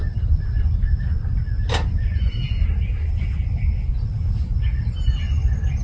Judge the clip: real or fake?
real